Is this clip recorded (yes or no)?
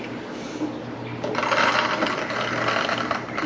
yes